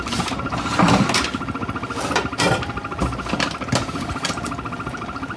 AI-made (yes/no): no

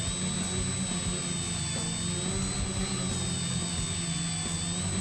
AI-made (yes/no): no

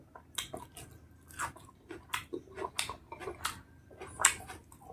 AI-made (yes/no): no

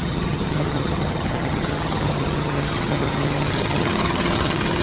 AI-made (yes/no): yes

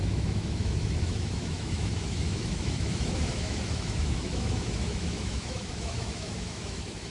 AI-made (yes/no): yes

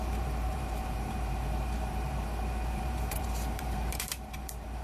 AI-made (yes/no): yes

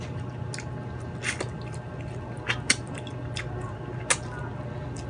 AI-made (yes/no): no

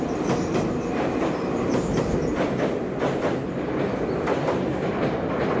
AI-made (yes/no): no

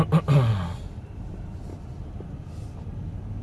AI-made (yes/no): no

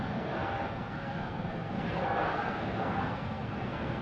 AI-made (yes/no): yes